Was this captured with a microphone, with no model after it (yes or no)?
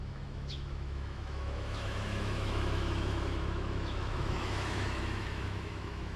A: no